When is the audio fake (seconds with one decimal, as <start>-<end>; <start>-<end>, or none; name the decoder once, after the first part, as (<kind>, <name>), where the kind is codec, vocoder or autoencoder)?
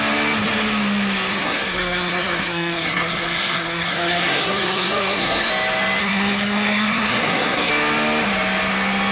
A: 1.3-5.5 (codec, SNAC); 6.0-7.7